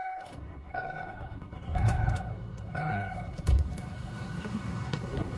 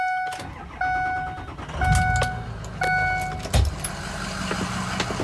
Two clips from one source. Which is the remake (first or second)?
first